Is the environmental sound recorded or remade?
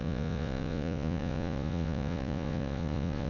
remade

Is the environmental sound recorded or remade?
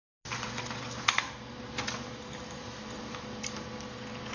recorded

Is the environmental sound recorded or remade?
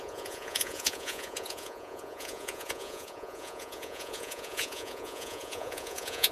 remade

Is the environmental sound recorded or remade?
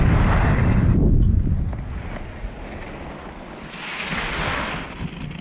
recorded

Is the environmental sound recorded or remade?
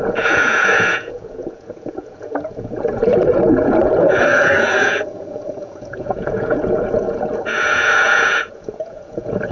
remade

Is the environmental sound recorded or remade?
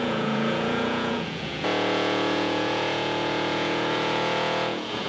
remade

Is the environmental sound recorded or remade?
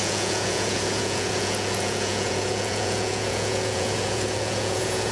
remade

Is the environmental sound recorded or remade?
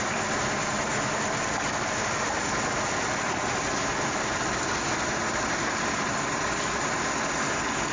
recorded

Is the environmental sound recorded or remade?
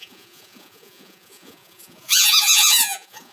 remade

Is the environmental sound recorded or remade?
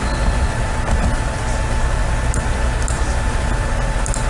recorded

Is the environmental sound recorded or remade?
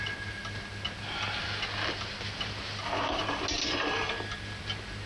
recorded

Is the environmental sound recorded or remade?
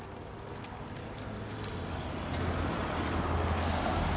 recorded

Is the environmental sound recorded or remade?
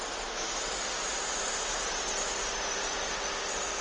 recorded